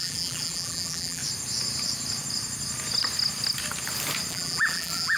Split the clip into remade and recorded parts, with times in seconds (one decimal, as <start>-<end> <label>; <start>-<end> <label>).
0.0-1.2 remade; 1.2-4.3 recorded; 4.3-5.2 remade